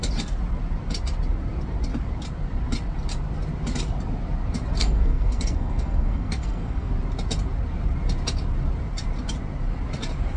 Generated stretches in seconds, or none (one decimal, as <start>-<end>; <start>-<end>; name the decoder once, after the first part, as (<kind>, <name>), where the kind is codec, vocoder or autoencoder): 4.8-6.9 (codec, SNAC)